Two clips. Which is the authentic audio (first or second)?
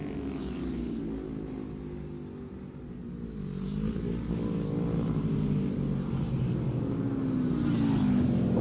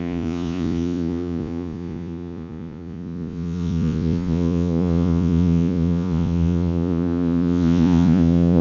first